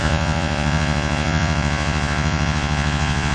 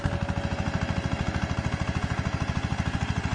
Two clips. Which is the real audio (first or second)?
second